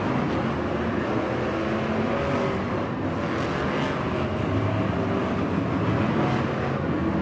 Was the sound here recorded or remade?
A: recorded